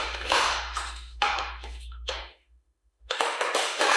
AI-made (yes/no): yes